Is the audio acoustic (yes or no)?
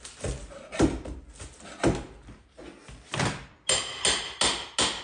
yes